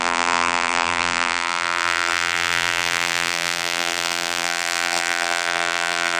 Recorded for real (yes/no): no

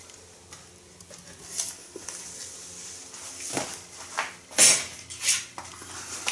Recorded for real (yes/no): yes